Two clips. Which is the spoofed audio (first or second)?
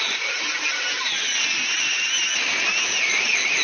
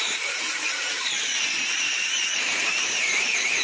second